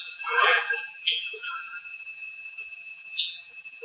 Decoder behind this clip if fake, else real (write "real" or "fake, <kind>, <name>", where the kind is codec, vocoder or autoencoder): fake, vocoder, BigVGAN v2